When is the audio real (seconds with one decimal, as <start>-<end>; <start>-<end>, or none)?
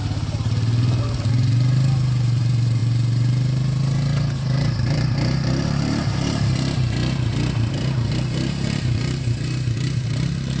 0.0-1.3